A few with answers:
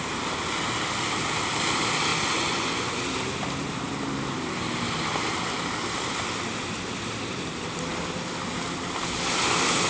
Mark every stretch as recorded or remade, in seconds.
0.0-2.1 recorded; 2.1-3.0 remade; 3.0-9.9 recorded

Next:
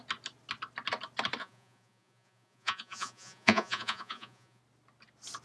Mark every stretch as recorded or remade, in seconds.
0.0-1.4 recorded; 1.4-4.6 remade; 4.6-5.4 recorded

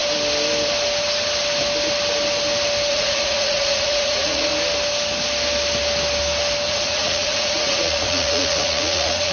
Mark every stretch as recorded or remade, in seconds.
0.0-2.9 recorded; 2.9-4.5 remade; 4.5-6.7 recorded; 6.7-9.3 remade

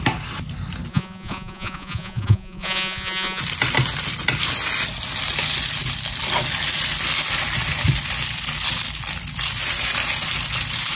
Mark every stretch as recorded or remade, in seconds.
0.0-0.9 recorded; 0.9-3.4 remade; 3.4-10.9 recorded

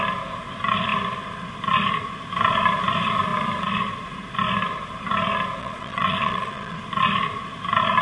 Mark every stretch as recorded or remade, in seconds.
0.0-5.6 recorded; 5.6-6.8 remade; 6.8-8.0 recorded